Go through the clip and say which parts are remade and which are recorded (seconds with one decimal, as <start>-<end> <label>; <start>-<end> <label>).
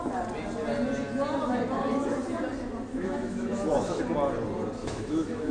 0.0-2.9 recorded; 2.9-4.0 remade; 4.0-4.8 recorded; 4.8-5.5 remade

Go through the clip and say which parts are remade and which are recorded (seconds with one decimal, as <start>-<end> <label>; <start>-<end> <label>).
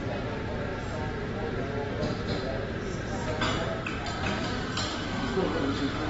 0.0-4.9 recorded; 4.9-6.1 remade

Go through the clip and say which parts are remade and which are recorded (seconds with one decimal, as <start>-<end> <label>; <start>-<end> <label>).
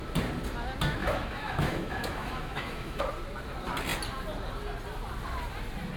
0.0-1.0 recorded; 1.0-3.0 remade; 3.0-6.0 recorded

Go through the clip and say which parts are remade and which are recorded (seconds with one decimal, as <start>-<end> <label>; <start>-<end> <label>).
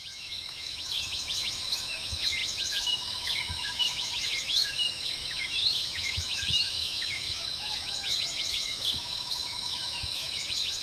0.0-10.8 remade